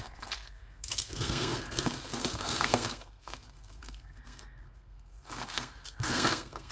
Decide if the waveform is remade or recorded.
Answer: remade